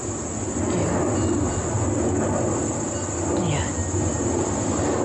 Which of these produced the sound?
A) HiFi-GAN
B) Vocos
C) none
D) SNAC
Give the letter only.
C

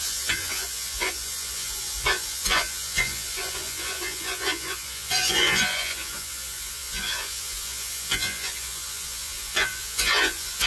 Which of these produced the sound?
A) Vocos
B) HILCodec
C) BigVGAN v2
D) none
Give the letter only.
A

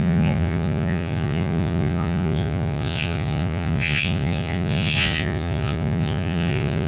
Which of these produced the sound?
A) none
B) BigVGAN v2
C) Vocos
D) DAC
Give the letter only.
C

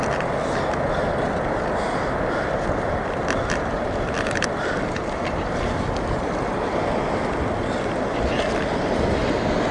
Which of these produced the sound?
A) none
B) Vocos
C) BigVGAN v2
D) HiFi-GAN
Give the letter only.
A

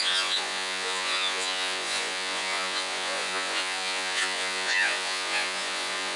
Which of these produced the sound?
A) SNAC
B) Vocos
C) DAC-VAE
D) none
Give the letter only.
B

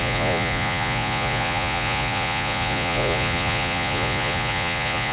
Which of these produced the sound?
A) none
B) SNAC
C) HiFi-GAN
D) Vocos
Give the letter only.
D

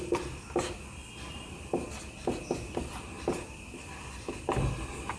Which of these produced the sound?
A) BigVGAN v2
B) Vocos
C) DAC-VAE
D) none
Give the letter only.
D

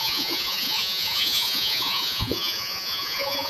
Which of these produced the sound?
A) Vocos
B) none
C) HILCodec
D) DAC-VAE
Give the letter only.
A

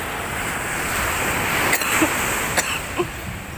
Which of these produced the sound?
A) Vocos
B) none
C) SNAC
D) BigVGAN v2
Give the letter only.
B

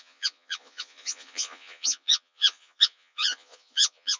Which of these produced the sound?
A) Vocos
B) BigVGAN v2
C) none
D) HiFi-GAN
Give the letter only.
A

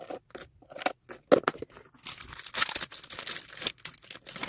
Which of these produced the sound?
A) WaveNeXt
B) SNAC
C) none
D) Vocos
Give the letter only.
C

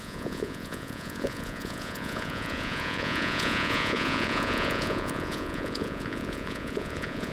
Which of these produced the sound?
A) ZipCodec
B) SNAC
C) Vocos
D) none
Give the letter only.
C